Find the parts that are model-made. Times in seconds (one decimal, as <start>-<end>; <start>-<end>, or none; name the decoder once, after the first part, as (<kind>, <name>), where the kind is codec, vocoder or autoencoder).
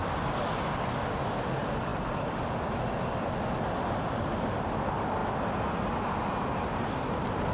1.9-3.8 (vocoder, BigVGAN v2)